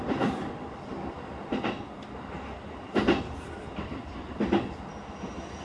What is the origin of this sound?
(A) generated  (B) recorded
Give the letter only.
B